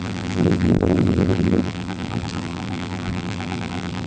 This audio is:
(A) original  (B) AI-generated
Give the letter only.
B